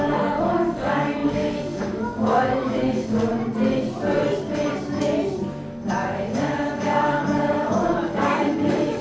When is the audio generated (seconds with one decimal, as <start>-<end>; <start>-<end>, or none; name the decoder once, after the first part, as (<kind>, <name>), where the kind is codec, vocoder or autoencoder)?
0.0-3.3 (codec, DAC); 5.9-9.0